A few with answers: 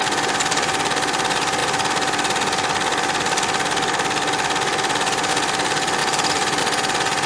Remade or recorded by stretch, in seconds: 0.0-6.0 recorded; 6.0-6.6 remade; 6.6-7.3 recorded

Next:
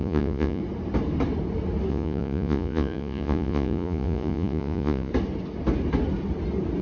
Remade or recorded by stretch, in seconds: 0.0-0.6 remade; 0.6-1.9 recorded; 1.9-5.1 remade; 5.1-6.8 recorded

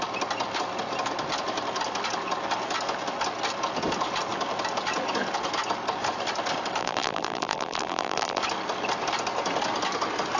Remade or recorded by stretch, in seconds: 0.0-6.8 recorded; 6.8-8.4 remade; 8.4-10.4 recorded